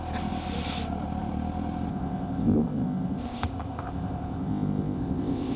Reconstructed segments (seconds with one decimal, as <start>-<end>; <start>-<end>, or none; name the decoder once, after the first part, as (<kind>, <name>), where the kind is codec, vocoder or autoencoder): 1.9-5.6 (codec, ZipCodec)